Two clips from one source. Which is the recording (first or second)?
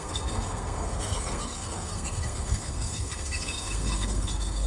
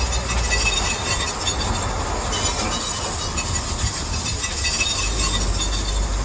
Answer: second